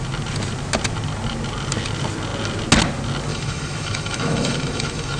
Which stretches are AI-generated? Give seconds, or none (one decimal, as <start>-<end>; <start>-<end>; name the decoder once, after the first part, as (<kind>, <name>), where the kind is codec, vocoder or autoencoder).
3.3-5.2 (autoencoder, DAC-VAE)